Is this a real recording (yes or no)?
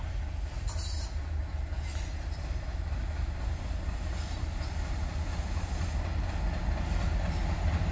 yes